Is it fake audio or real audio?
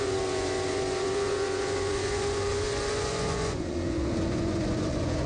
fake